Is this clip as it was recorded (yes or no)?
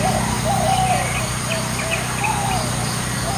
yes